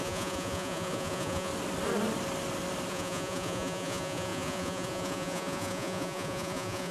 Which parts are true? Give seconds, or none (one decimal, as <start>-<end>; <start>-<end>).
1.5-2.9